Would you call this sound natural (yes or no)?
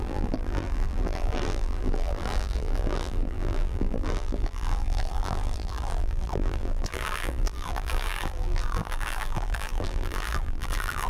no